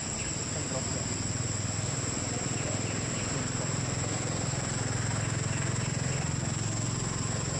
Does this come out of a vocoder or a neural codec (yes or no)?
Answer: no